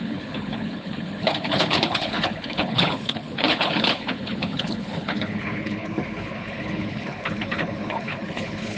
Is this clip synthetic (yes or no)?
yes